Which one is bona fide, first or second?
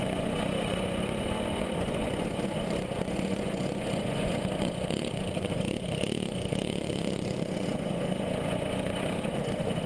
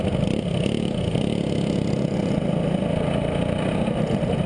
second